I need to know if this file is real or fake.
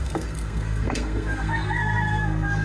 fake